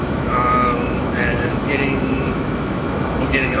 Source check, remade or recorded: remade